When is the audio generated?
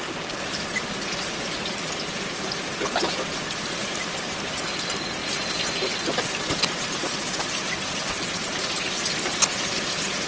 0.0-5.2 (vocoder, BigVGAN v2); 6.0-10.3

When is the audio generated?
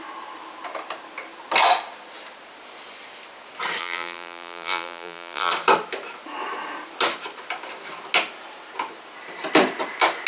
3.8-5.5 (vocoder, BigVGAN v2)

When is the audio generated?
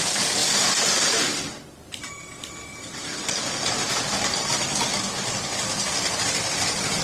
6.2-7.0 (vocoder, BigVGAN v2)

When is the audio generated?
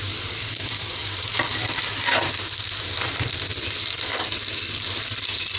0.0-1.0 (vocoder, BigVGAN v2); 2.9-3.5; 4.5-5.6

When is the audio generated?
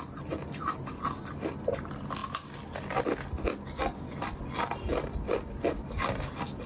none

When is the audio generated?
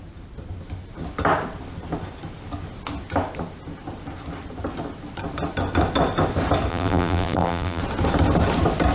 6.7-7.8 (vocoder, BigVGAN v2)